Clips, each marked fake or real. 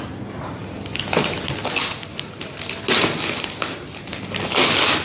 real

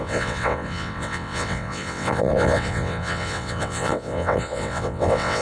fake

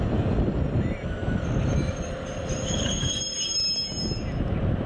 real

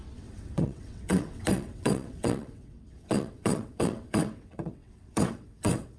fake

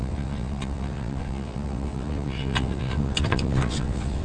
fake